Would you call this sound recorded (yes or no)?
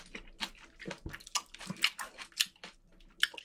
yes